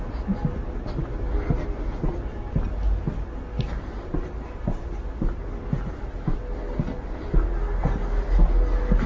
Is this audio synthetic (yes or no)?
no